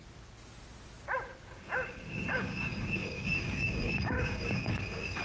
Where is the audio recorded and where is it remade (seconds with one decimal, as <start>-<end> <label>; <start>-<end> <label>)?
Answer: 0.0-1.5 recorded; 1.5-5.2 remade